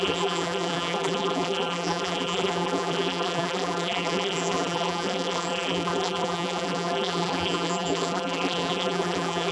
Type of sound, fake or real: fake